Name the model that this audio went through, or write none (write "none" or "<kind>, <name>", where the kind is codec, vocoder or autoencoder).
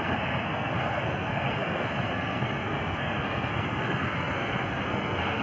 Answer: codec, SNAC